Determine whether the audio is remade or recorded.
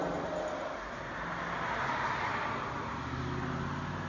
recorded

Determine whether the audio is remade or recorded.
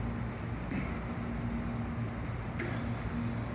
recorded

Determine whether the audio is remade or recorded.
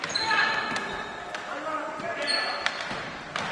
recorded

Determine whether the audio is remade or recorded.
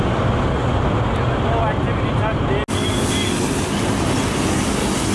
recorded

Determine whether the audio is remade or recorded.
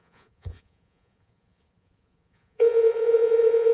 remade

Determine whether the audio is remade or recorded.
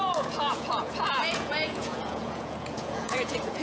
remade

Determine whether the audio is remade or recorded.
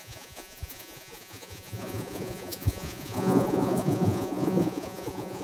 remade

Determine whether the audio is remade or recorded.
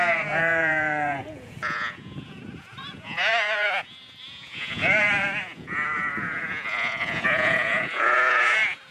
remade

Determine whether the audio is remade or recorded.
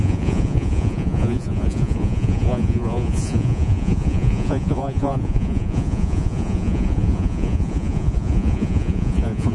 remade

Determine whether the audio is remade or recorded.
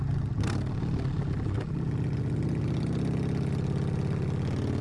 recorded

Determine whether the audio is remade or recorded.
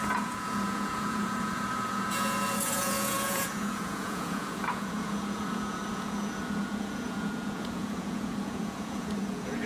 remade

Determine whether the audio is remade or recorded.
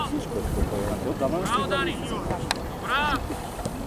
recorded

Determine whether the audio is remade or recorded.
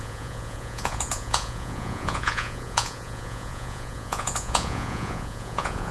remade